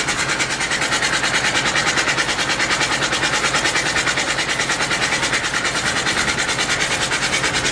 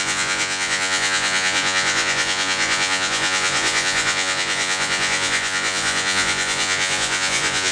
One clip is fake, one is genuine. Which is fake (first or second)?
second